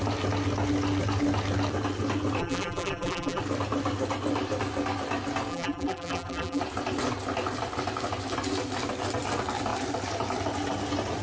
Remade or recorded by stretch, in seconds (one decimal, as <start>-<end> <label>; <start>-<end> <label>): 0.0-2.4 recorded; 2.4-3.4 remade; 3.4-5.5 recorded; 5.5-6.6 remade; 6.6-11.2 recorded